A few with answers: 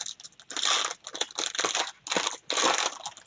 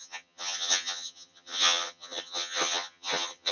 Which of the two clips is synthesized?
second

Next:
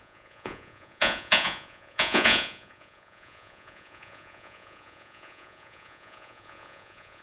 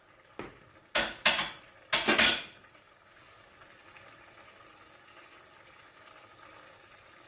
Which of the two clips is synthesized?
first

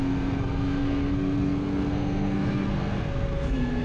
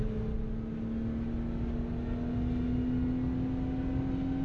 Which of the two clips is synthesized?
first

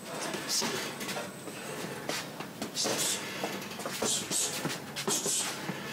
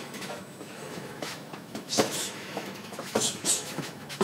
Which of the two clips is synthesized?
second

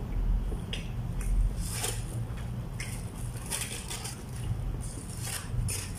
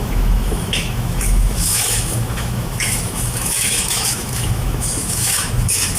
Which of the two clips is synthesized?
second